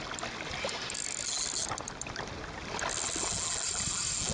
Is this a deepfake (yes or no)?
no